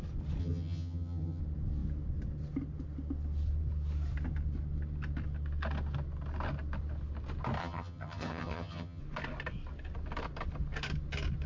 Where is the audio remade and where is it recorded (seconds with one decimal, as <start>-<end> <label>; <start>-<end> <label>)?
0.0-0.4 recorded; 0.4-1.4 remade; 1.4-7.6 recorded; 7.6-9.0 remade; 9.0-11.5 recorded